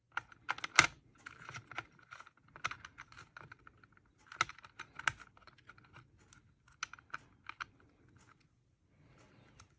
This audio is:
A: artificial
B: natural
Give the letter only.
B